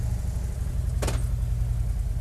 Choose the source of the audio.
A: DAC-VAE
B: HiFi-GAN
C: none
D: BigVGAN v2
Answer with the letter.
C